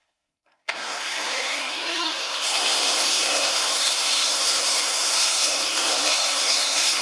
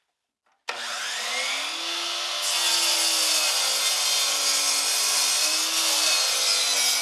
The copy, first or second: first